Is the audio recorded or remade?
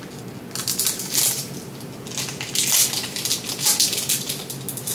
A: recorded